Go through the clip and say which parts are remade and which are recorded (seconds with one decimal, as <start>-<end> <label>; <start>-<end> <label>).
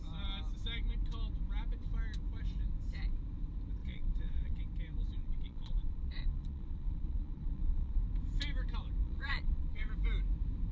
0.0-3.8 recorded; 3.8-4.6 remade; 4.6-5.2 recorded; 5.2-8.0 remade; 8.0-9.0 recorded; 9.0-9.9 remade; 9.9-10.7 recorded